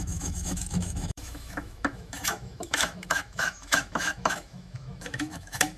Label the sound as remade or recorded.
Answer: remade